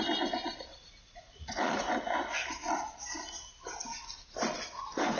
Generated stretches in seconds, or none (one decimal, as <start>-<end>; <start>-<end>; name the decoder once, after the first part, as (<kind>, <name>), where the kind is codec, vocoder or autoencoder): 0.7-1.9 (vocoder, Vocos)